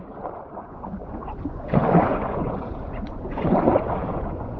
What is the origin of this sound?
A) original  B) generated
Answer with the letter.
B